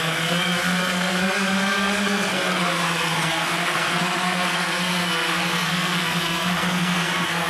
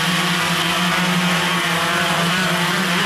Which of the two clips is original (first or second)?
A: second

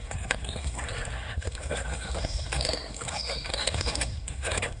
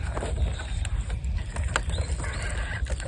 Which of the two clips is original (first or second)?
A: second